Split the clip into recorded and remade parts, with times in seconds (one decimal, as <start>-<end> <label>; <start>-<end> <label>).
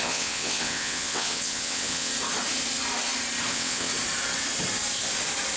0.0-2.1 remade; 2.1-3.5 recorded; 3.5-3.9 remade; 3.9-5.6 recorded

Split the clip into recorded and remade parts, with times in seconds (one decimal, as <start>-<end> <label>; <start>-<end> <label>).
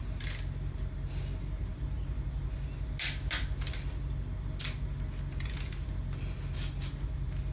0.0-7.5 recorded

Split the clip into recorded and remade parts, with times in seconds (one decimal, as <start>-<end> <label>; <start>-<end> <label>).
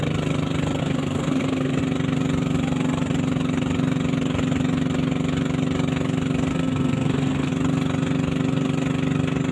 0.0-0.8 recorded; 0.8-1.8 remade; 1.8-6.5 recorded; 6.5-7.5 remade; 7.5-9.5 recorded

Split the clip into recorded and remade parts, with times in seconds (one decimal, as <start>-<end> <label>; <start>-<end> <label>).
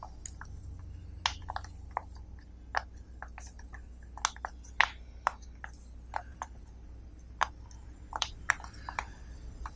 0.0-6.3 recorded; 6.3-9.8 remade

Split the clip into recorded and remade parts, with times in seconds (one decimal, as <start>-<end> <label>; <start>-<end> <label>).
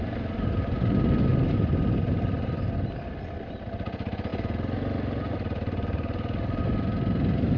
0.0-7.6 recorded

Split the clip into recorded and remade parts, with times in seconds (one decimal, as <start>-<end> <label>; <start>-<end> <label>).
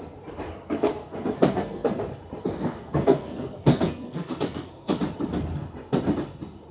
0.0-0.5 recorded; 0.5-2.0 remade; 2.0-2.4 recorded; 2.4-5.0 remade; 5.0-6.7 recorded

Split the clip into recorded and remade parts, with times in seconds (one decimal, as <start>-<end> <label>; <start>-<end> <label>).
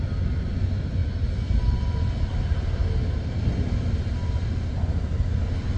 0.0-5.8 recorded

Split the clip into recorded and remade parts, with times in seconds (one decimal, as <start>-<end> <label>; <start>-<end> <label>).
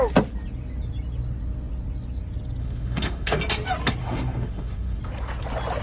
0.0-2.6 recorded; 2.6-3.4 remade; 3.4-4.0 recorded; 4.0-5.0 remade; 5.0-5.8 recorded